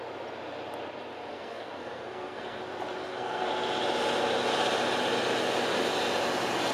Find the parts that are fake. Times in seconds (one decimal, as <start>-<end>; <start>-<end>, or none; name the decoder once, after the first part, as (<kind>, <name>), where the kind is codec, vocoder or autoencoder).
1.3-2.6 (codec, SNAC); 3.0-3.5